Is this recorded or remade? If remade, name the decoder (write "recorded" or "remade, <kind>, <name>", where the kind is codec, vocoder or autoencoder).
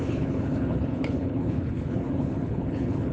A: remade, codec, HILCodec